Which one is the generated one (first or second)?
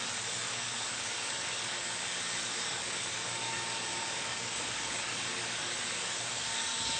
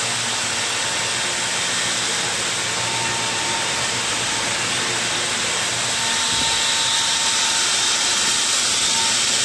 first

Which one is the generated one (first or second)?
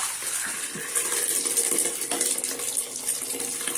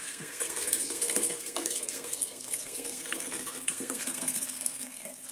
second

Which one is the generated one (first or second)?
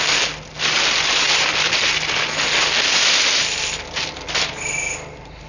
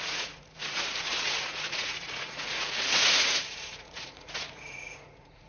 second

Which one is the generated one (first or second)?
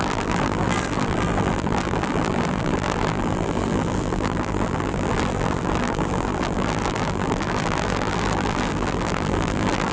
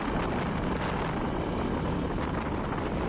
first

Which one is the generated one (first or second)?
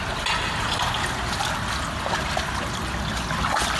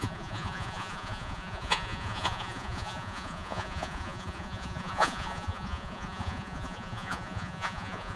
second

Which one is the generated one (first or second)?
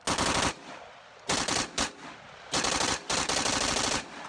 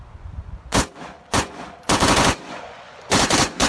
second